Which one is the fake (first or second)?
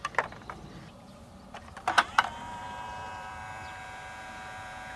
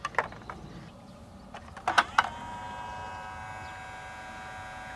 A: first